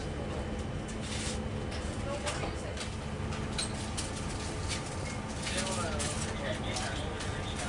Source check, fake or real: real